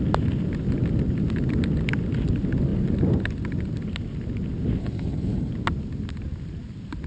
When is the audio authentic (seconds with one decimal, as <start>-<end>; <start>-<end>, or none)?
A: 0.0-4.8; 5.5-7.1